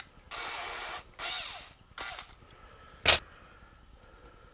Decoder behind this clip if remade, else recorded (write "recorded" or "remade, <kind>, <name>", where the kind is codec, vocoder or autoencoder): recorded